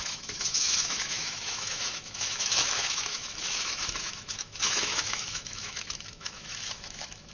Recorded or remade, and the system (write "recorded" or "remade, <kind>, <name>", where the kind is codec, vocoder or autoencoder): remade, autoencoder, DAC-VAE